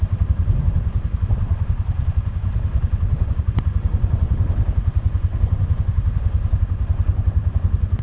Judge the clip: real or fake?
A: real